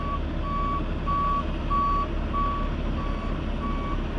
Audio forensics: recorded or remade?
recorded